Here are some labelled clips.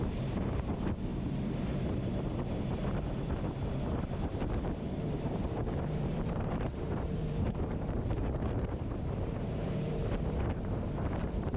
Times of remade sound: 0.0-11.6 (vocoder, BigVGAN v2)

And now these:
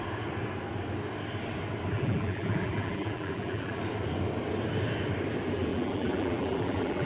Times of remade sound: 1.9-3.8 (vocoder, BigVGAN v2); 5.7-7.1

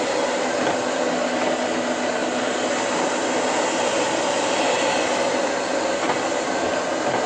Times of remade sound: 2.2-4.6 (vocoder, BigVGAN v2)

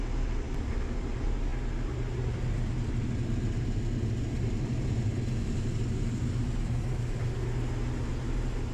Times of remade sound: none

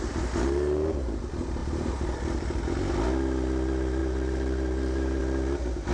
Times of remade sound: 1.6-2.6 (vocoder, BigVGAN v2); 4.0-5.2

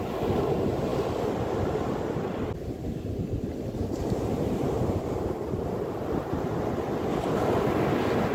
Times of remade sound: none